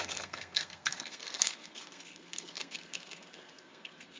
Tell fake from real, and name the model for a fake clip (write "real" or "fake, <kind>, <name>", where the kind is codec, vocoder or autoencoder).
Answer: fake, codec, SNAC